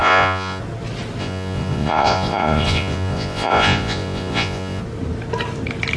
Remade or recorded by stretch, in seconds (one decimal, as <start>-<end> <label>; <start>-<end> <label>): 0.0-0.6 remade; 0.6-1.2 recorded; 1.2-4.8 remade; 4.8-6.0 recorded